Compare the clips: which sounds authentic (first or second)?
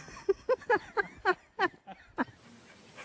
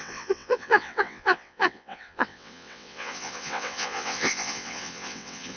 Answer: first